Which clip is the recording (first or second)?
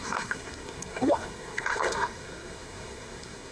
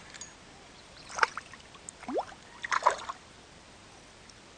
second